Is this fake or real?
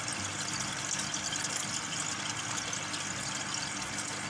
real